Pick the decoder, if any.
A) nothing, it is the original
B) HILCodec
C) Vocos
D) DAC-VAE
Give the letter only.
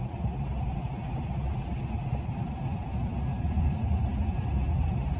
A